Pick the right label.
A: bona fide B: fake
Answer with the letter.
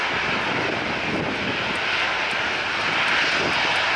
A